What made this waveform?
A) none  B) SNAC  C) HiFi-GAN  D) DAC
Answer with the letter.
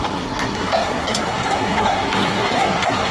B